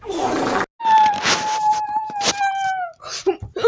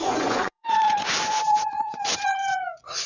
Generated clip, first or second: second